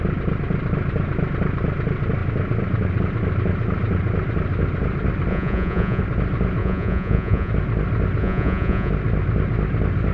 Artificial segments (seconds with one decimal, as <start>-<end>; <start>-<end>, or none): 5.3-6.0; 6.6-7.5; 8.2-8.9